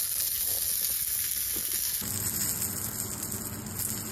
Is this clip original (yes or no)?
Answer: yes